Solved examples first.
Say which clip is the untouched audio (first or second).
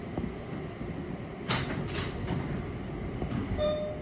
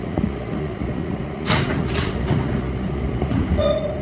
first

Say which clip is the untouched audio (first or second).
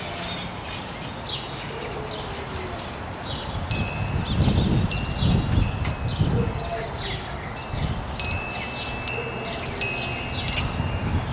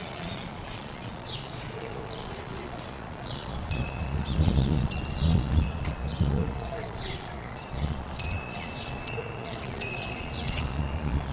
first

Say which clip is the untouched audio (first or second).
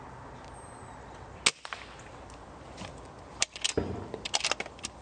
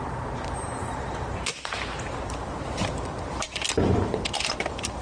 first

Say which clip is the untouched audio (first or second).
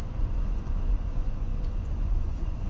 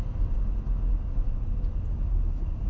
second